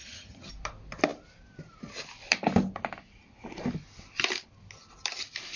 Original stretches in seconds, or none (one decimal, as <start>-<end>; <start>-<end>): 0.5-5.6